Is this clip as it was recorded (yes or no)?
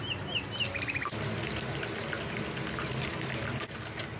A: yes